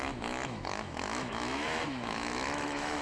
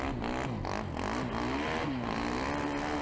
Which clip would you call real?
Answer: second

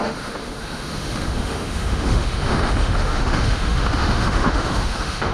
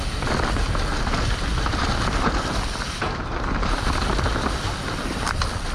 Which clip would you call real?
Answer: second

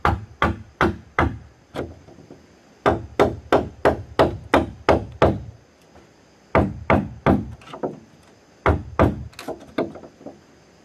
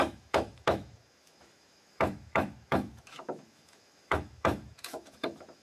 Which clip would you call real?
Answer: first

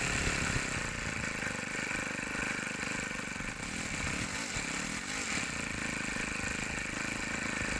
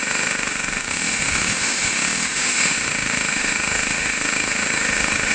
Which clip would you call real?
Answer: first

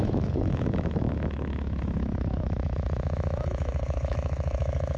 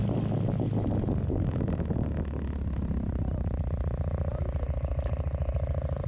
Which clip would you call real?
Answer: second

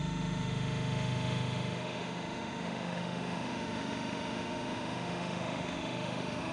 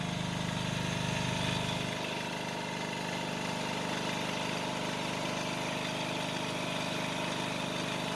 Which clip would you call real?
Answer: second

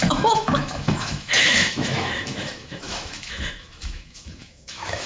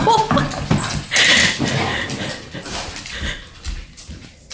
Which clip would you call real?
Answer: second